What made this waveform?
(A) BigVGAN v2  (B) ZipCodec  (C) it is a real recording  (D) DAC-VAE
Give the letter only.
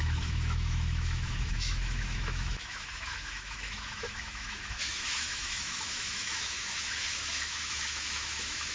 D